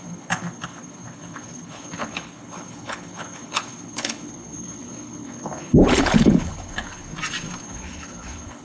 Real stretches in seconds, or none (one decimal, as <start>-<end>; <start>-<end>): 7.1-7.6